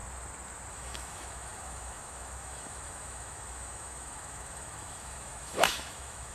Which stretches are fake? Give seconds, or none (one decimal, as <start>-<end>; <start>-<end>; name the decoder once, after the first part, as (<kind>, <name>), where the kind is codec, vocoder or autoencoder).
0.7-6.3 (autoencoder, DAC-VAE)